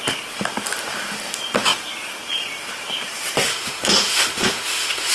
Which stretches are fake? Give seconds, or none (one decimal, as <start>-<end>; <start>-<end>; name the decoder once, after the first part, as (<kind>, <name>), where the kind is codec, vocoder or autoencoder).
3.5-5.1 (autoencoder, DAC-VAE)